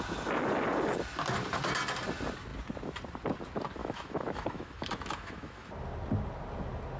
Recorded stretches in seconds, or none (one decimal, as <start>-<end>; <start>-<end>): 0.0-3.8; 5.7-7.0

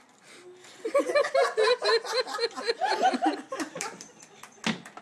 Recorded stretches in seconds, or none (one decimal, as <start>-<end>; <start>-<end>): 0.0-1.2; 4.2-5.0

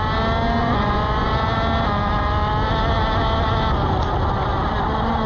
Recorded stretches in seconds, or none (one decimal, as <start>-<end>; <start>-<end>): 0.0-0.6; 1.3-5.3

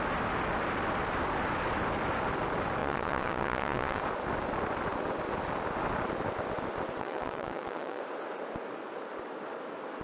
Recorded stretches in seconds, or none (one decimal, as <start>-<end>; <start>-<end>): 0.0-2.8; 4.0-7.0; 8.0-10.0

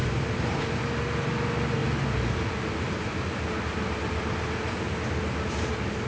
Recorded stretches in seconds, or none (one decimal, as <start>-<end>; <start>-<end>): 0.0-6.1

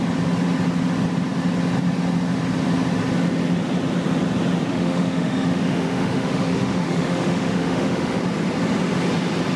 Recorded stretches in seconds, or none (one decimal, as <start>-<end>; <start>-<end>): 0.0-4.7; 8.2-9.6